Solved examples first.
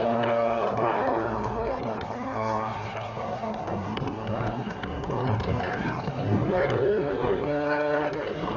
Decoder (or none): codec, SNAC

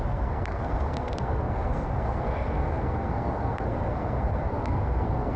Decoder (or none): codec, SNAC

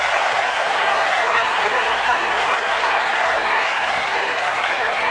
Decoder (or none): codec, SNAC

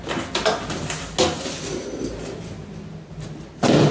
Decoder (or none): none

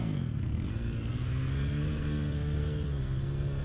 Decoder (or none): codec, SNAC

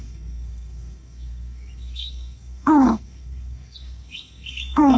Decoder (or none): codec, SNAC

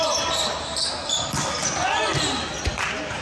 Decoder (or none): none